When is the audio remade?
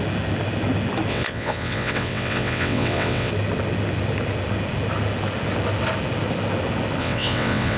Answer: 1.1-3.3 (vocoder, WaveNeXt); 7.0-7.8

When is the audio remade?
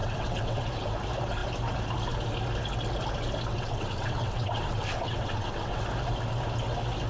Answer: 0.0-0.7 (vocoder, WaveNeXt); 3.5-5.8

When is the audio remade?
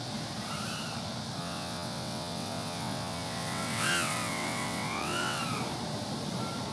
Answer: 1.4-5.4 (vocoder, WaveNeXt)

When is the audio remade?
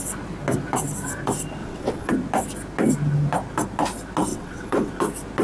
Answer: 1.6-2.1 (vocoder, WaveNeXt); 4.3-4.9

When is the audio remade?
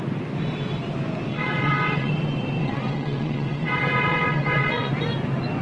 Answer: 1.3-2.1 (vocoder, WaveNeXt); 2.6-4.9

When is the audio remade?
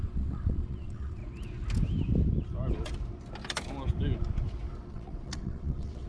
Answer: 0.0-1.2 (vocoder, WaveNeXt); 4.9-6.1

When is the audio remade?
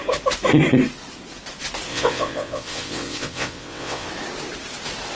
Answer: 1.9-4.1 (vocoder, WaveNeXt)